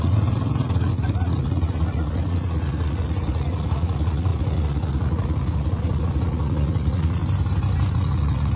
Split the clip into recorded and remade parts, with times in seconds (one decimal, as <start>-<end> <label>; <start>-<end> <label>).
0.0-7.2 remade; 7.2-7.9 recorded; 7.9-8.6 remade